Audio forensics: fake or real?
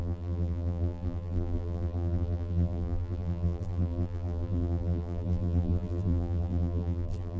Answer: fake